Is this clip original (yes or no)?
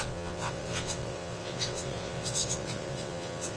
no